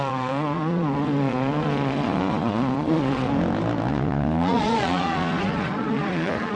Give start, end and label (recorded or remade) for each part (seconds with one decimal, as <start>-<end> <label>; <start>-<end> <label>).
0.0-3.3 remade; 3.3-3.9 recorded; 3.9-6.6 remade